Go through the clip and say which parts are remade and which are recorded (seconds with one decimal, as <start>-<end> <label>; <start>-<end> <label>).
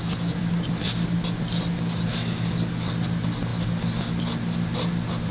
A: 0.0-5.3 recorded